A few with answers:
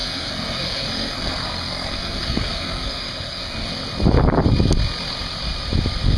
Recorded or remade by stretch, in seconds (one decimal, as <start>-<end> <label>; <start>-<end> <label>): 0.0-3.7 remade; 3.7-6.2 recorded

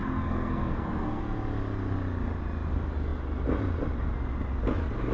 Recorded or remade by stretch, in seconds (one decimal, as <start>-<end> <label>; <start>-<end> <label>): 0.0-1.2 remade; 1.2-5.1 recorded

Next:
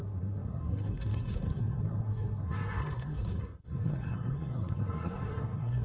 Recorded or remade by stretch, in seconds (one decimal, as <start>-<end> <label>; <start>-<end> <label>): 0.0-5.8 remade